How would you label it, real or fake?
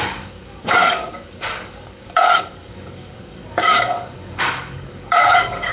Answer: fake